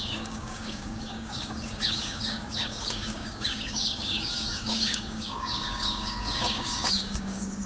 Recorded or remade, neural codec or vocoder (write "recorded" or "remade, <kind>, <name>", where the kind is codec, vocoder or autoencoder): remade, codec, DAC